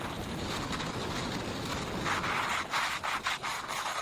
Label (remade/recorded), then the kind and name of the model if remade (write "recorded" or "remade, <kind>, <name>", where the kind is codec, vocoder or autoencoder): recorded